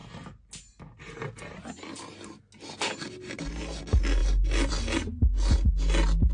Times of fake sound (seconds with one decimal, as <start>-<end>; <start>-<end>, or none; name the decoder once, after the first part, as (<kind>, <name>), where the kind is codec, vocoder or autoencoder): none